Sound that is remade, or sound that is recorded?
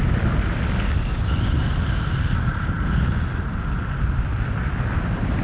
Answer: recorded